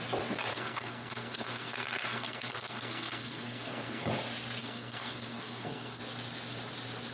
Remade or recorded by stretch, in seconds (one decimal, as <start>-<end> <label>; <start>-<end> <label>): 0.0-0.5 recorded; 0.5-4.1 remade; 4.1-4.6 recorded; 4.6-6.0 remade; 6.0-7.1 recorded